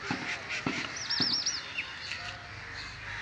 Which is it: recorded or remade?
recorded